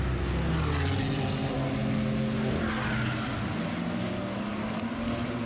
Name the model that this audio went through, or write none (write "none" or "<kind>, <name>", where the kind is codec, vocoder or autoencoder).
none